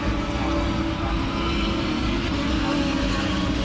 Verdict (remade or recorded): recorded